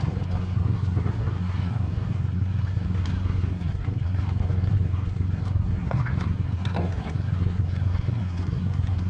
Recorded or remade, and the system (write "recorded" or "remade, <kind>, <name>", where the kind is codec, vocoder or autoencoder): remade, codec, SNAC